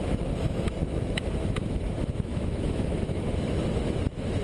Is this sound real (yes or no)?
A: no